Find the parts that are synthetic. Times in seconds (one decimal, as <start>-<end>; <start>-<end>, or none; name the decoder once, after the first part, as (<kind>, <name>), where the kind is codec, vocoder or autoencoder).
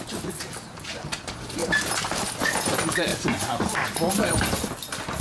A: 3.1-5.2 (vocoder, BigVGAN v2)